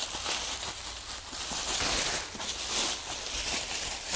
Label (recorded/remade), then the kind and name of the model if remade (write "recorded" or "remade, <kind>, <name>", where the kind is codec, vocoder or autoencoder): recorded